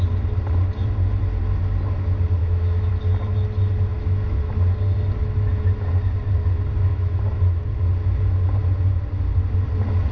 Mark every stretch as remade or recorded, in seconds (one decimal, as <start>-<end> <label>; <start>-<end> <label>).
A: 0.0-2.4 recorded; 2.4-2.9 remade; 2.9-3.9 recorded; 3.9-4.5 remade; 4.5-6.9 recorded; 6.9-7.4 remade; 7.4-10.1 recorded